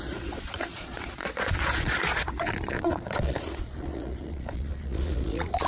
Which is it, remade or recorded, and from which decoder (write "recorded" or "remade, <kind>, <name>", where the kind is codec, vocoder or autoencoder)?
remade, vocoder, Vocos